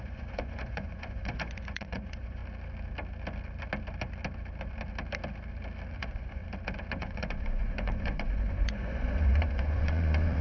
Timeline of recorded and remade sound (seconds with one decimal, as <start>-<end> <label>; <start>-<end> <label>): 0.0-2.4 remade; 2.4-6.0 recorded; 6.0-6.4 remade; 6.4-7.0 recorded; 7.0-10.4 remade